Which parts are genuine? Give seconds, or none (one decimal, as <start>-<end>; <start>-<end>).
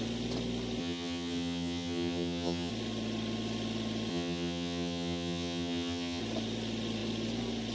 0.0-0.8; 2.7-4.1; 6.2-7.7